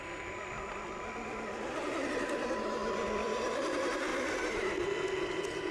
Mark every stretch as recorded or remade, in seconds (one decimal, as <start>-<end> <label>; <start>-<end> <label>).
0.0-4.1 recorded; 4.1-4.7 remade; 4.7-5.7 recorded